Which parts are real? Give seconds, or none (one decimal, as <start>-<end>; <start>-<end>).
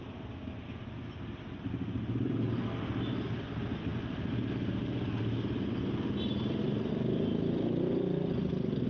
0.0-8.9